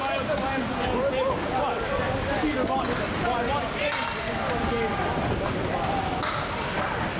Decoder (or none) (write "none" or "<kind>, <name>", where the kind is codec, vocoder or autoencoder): none